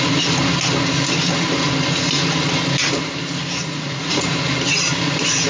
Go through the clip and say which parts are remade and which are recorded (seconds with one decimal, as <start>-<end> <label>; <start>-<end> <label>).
0.0-3.6 recorded; 3.6-4.3 remade; 4.3-5.5 recorded